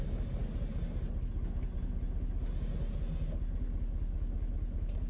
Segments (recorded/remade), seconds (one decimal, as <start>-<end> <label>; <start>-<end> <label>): 0.0-5.1 recorded